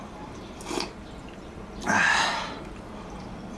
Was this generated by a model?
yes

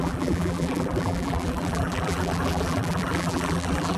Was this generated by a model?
yes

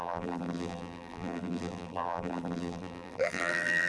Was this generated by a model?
yes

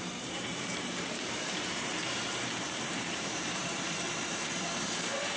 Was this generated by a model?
yes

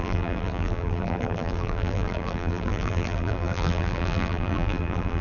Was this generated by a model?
yes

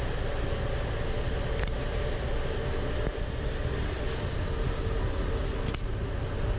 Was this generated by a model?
no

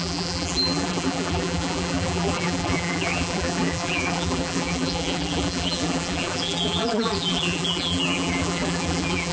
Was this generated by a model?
yes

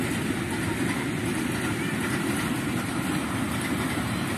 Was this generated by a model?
no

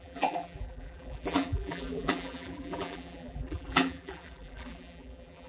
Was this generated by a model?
yes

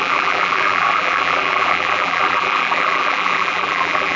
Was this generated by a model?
yes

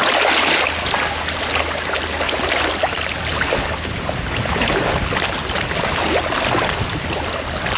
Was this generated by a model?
no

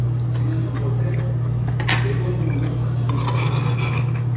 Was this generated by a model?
no